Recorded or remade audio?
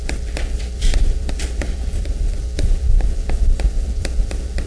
remade